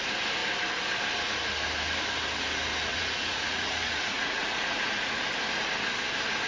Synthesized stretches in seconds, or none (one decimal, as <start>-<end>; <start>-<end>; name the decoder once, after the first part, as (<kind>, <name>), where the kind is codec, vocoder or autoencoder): 2.9-5.2 (vocoder, Vocos)